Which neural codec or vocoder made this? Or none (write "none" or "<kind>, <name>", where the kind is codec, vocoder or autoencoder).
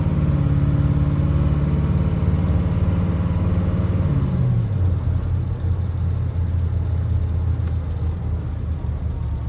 none